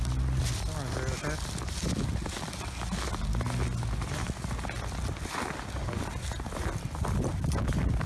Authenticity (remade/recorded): recorded